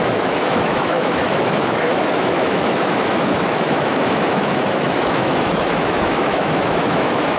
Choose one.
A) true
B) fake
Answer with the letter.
B